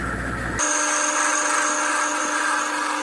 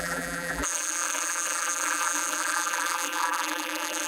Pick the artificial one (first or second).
second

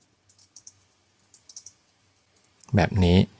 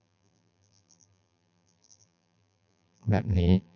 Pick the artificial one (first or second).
second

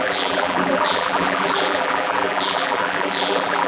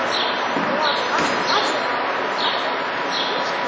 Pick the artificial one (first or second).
first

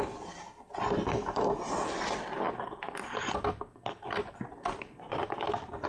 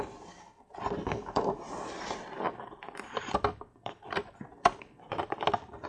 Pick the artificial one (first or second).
second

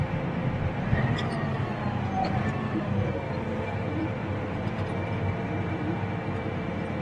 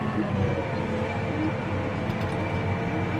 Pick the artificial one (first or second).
first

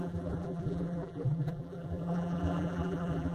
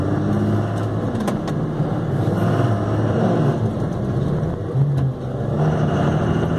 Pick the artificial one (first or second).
first